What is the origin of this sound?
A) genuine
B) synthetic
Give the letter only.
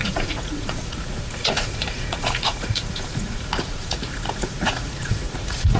B